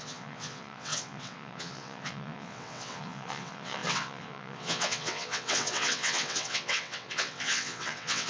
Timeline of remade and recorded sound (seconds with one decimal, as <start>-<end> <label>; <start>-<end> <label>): 0.0-8.3 remade